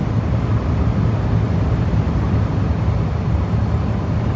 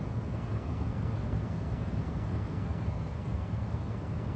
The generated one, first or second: second